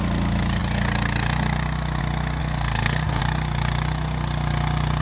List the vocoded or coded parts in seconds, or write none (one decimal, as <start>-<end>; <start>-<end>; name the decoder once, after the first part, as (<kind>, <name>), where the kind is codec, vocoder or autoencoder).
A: 2.4-3.2 (codec, SNAC)